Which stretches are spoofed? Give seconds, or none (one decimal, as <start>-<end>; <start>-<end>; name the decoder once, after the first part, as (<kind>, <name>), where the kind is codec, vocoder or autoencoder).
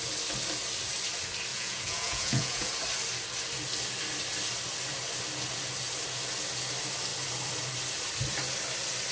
1.5-2.7 (vocoder, Vocos)